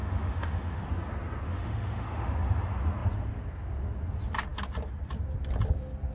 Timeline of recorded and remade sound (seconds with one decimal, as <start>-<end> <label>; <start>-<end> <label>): 0.0-0.8 remade; 0.8-1.5 recorded; 1.5-2.3 remade; 2.3-6.1 recorded